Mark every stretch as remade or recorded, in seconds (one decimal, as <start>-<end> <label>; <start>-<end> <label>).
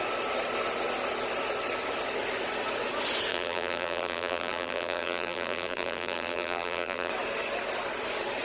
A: 0.0-3.3 recorded; 3.3-7.1 remade; 7.1-8.4 recorded